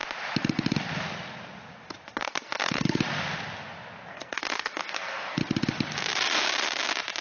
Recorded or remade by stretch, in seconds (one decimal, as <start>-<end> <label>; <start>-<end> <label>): 0.0-2.2 recorded; 2.2-3.0 remade; 3.0-4.1 recorded; 4.1-5.4 remade; 5.4-7.2 recorded

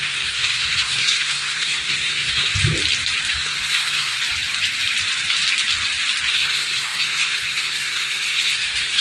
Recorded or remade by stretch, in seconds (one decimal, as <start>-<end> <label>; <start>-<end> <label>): 0.0-2.5 remade; 2.5-3.3 recorded; 3.3-4.2 remade; 4.2-6.3 recorded; 6.3-9.0 remade

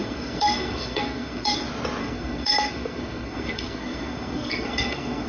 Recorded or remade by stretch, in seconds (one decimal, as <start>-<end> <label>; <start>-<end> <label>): 0.0-1.6 remade; 1.6-2.0 recorded; 2.0-5.3 remade

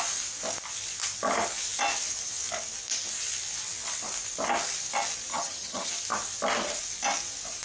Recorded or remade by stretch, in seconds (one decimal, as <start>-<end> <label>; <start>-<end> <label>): 0.0-5.3 recorded; 5.3-5.9 remade; 5.9-7.6 recorded

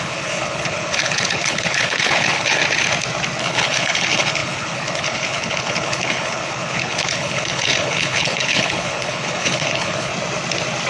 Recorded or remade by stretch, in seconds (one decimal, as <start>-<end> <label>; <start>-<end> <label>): 0.0-2.6 remade; 2.6-3.4 recorded; 3.4-10.1 remade; 10.1-10.9 recorded

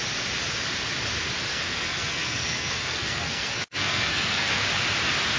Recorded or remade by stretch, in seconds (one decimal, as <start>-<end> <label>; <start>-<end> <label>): 0.0-1.5 recorded; 1.5-4.7 remade; 4.7-5.4 recorded

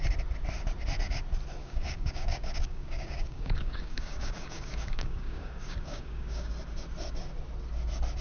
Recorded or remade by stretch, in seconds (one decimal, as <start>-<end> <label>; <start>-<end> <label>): 0.0-1.6 recorded; 1.6-6.5 remade; 6.5-8.2 recorded